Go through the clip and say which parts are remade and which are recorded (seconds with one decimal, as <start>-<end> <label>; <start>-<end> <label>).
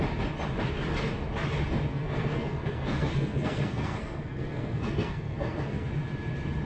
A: 0.0-1.9 recorded; 1.9-5.9 remade; 5.9-6.7 recorded